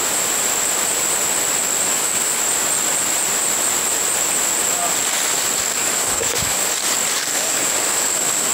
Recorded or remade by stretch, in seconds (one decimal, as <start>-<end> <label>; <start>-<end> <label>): 0.0-1.9 recorded; 1.9-2.4 remade; 2.4-5.7 recorded; 5.7-6.7 remade; 6.7-7.3 recorded; 7.3-8.5 remade